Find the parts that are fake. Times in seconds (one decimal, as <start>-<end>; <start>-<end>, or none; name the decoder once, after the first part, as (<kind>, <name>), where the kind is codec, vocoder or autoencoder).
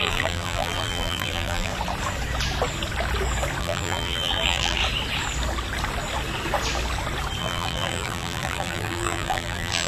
0.0-1.7 (vocoder, BigVGAN v2); 3.6-4.8; 7.4-9.9